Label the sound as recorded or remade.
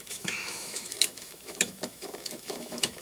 remade